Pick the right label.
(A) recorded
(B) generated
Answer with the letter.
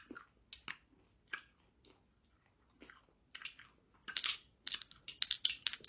A